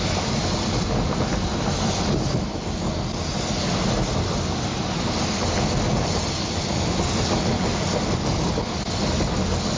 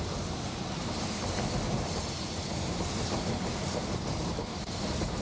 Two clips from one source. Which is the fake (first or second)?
second